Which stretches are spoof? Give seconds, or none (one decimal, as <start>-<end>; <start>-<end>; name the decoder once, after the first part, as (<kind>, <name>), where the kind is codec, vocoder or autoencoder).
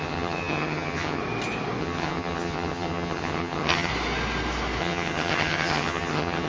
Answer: 0.0-1.2 (vocoder, HiFi-GAN); 1.8-3.9; 4.8-6.5